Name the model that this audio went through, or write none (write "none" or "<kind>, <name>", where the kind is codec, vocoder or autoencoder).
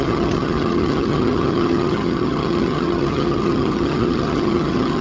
vocoder, HiFi-GAN